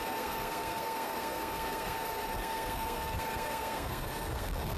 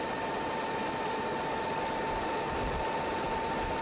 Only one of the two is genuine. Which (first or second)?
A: second